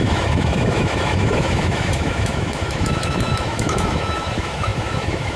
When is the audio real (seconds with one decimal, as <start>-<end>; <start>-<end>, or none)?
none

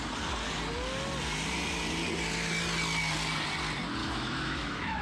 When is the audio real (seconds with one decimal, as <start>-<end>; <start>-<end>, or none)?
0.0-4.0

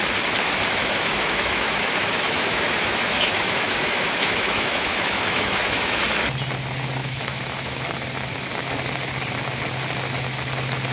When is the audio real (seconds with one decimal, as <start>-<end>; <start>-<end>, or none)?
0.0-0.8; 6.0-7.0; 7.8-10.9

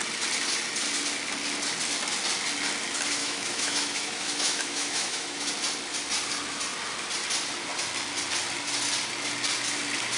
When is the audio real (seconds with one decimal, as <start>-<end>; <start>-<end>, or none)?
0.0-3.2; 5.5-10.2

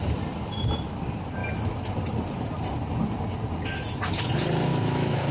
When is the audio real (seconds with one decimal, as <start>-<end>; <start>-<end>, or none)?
0.0-4.7

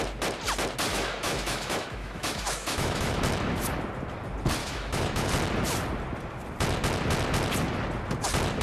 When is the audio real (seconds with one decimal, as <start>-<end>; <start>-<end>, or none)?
0.0-0.9; 3.2-4.6; 5.3-8.6

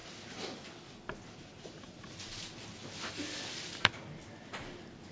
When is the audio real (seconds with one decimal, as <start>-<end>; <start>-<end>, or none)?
0.0-5.1